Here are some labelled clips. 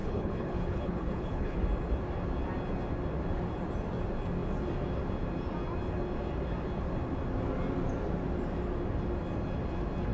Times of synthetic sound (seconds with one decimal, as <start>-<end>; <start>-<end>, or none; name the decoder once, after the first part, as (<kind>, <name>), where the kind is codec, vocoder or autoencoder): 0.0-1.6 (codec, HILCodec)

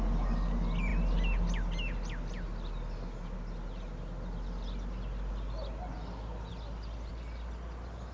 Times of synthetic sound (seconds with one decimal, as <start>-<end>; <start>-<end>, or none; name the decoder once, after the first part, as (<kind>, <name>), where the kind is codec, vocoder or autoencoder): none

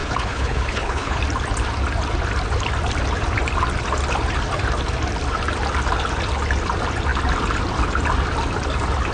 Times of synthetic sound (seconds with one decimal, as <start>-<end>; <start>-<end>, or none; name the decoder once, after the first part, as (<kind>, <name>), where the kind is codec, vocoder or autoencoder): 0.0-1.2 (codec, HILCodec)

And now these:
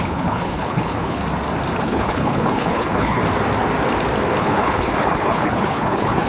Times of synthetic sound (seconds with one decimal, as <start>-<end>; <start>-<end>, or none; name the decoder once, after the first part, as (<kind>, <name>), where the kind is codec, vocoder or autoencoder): 0.0-1.2 (codec, HILCodec); 1.8-3.2; 4.4-6.3

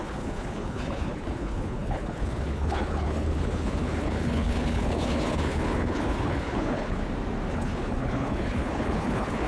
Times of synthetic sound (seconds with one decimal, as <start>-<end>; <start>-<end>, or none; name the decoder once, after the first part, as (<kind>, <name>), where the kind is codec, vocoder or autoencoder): 0.0-7.0 (codec, HILCodec); 7.5-9.5

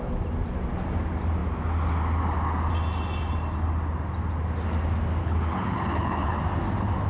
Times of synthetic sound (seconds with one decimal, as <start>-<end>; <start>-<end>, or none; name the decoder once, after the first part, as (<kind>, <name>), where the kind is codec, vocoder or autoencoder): 5.2-6.4 (codec, HILCodec)